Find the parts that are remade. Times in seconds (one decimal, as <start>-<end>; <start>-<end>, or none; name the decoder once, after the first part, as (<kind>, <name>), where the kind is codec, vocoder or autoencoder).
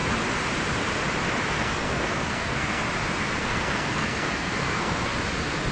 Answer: 1.5-2.8 (codec, SNAC); 3.4-5.1